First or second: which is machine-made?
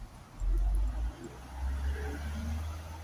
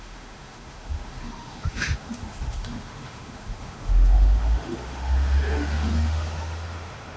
second